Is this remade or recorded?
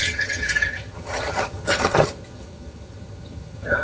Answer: remade